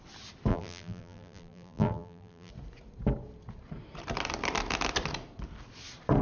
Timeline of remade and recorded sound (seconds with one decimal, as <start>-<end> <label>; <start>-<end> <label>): 0.0-0.5 recorded; 0.5-2.5 remade; 2.5-6.2 recorded